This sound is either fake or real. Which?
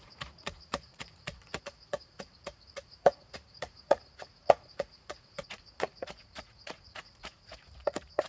fake